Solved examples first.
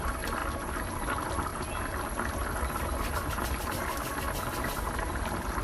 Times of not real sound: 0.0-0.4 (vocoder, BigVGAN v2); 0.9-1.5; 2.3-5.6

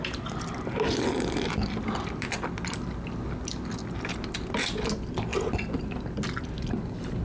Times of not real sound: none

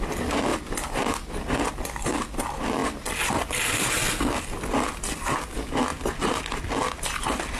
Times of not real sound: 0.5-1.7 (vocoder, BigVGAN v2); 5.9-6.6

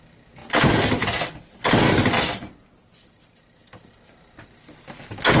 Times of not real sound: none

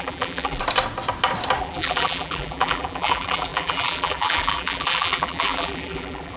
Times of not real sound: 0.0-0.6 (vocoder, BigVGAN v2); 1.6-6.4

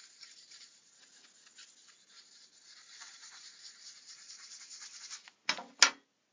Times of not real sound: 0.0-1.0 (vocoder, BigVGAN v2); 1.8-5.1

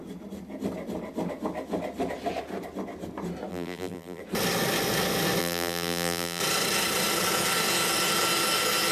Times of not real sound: 3.5-4.2 (vocoder, BigVGAN v2); 5.4-6.4

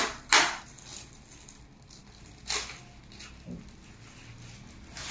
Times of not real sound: none